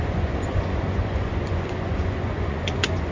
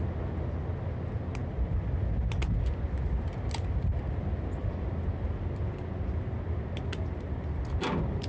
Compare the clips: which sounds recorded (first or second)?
second